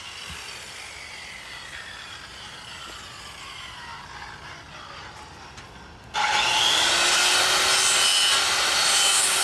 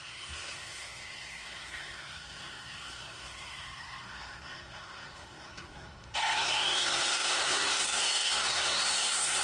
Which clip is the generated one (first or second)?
second